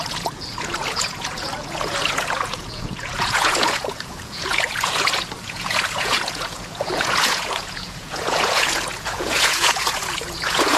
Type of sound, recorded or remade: remade